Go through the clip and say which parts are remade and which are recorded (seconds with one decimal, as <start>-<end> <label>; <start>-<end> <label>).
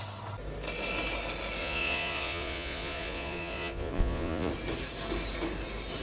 0.0-1.6 recorded; 1.6-4.5 remade; 4.5-6.0 recorded